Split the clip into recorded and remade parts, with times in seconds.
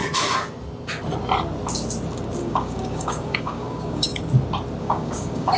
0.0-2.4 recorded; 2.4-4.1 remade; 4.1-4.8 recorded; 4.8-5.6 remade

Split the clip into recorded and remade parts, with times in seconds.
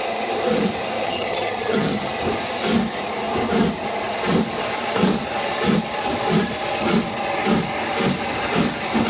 0.0-1.0 recorded; 1.0-2.1 remade; 2.1-9.1 recorded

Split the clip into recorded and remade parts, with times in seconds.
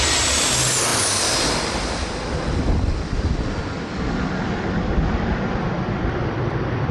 0.0-6.9 recorded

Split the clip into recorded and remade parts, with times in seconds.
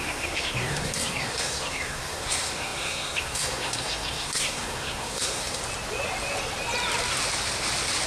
0.0-5.6 remade; 5.6-8.1 recorded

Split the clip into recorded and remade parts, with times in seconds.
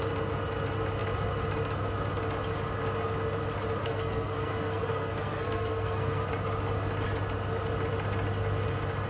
0.0-3.8 recorded; 3.8-6.3 remade; 6.3-9.1 recorded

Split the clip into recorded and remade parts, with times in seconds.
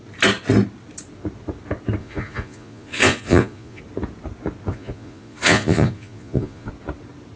0.0-2.0 recorded; 2.0-3.8 remade; 3.8-4.7 recorded; 4.7-6.7 remade; 6.7-7.4 recorded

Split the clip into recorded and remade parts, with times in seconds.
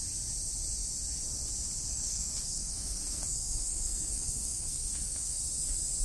0.0-1.9 recorded; 1.9-5.4 remade; 5.4-6.0 recorded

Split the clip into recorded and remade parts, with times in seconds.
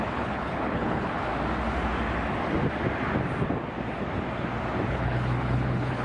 0.0-1.3 remade; 1.3-4.9 recorded; 4.9-6.0 remade